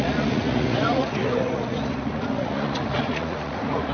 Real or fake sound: fake